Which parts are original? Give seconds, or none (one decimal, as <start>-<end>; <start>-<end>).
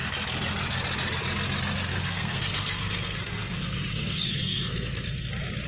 0.0-1.9; 5.3-5.7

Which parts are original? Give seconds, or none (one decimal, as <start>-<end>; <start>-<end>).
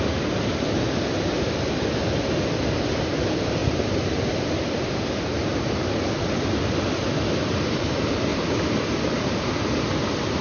0.0-3.6; 4.3-8.3; 9.7-10.4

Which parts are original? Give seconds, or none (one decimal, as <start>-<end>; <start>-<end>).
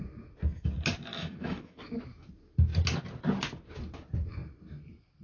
0.0-1.1; 1.8-5.2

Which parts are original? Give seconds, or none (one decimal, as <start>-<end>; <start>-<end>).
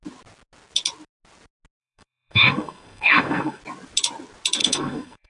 0.0-1.8; 3.6-4.6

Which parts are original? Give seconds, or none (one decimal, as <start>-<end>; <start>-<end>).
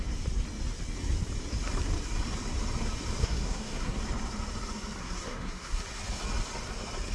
0.0-3.2; 4.0-5.0; 5.8-7.1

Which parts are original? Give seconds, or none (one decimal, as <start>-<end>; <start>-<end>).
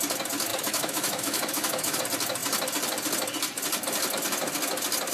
0.0-0.5; 2.0-5.1